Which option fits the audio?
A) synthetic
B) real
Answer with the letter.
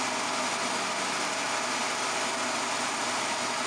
B